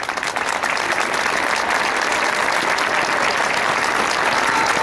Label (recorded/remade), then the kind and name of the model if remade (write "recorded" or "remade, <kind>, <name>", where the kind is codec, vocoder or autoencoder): recorded